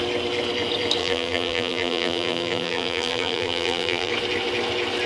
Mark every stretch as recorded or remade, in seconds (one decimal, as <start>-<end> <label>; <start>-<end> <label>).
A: 0.0-1.0 recorded; 1.0-4.1 remade; 4.1-5.1 recorded